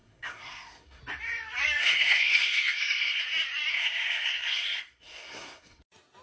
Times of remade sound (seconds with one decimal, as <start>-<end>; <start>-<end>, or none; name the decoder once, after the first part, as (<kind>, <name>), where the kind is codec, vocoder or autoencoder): 0.0-1.0 (codec, SNAC); 1.8-3.2; 3.7-5.8